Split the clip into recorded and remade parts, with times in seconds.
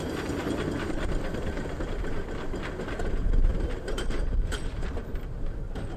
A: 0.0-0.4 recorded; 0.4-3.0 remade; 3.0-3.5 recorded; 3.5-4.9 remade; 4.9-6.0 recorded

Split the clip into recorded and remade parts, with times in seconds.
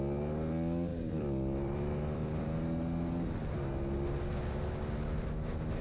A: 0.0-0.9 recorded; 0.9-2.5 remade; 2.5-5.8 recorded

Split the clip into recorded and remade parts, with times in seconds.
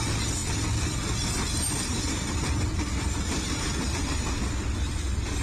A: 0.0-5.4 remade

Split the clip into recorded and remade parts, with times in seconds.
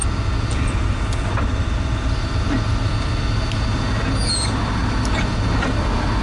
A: 0.0-2.9 remade; 2.9-6.2 recorded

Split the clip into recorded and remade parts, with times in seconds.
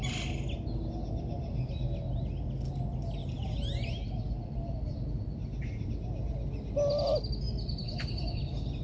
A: 0.0-3.2 recorded; 3.2-5.9 remade; 5.9-7.8 recorded; 7.8-8.4 remade; 8.4-8.8 recorded